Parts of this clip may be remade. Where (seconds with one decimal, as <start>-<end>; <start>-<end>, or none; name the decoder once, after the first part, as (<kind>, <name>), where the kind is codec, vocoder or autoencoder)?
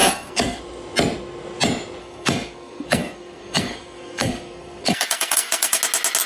0.0-0.6 (codec, SNAC); 2.0-5.8